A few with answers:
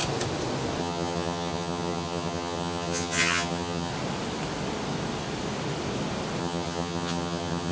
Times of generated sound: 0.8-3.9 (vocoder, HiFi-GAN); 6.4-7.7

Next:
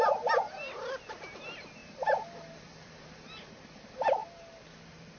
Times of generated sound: 1.8-3.8 (vocoder, BigVGAN v2)

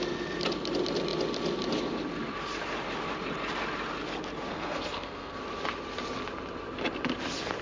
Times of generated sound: 4.5-5.4 (codec, SNAC)

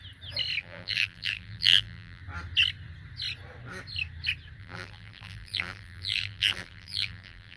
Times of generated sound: 0.6-2.2 (vocoder, BigVGAN v2); 4.6-7.6

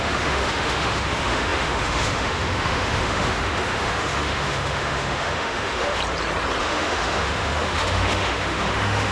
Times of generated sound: 0.0-6.0 (autoencoder, DAC-VAE); 6.6-9.1

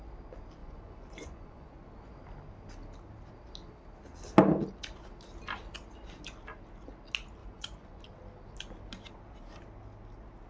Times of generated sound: 0.6-1.7 (vocoder, Vocos); 7.4-8.0